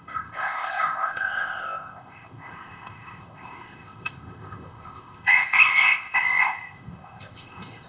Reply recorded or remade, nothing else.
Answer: remade